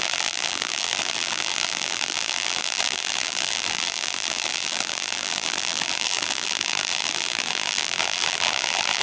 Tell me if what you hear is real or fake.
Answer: fake